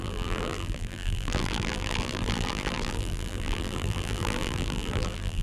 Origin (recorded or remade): remade